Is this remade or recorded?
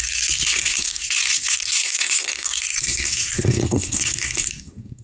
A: remade